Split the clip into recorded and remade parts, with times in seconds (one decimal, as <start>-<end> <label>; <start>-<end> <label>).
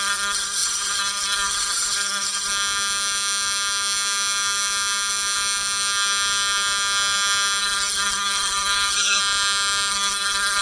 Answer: 0.0-2.5 remade; 2.5-7.6 recorded; 7.6-9.2 remade; 9.2-9.9 recorded; 9.9-10.6 remade